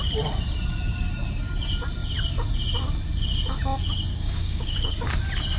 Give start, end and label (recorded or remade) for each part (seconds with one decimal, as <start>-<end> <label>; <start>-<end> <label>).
0.0-4.1 recorded; 4.1-4.9 remade; 4.9-5.6 recorded